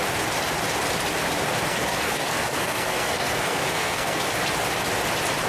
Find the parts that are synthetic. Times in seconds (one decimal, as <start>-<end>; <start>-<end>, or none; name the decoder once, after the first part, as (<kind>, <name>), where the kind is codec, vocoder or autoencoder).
1.7-4.2 (codec, SNAC)